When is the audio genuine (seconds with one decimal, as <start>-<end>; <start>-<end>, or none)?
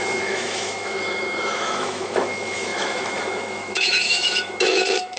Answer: none